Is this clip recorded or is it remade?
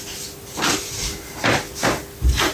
recorded